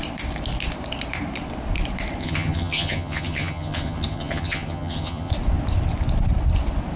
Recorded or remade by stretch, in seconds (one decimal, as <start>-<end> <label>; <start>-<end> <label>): 0.0-2.2 recorded; 2.2-5.3 remade; 5.3-7.0 recorded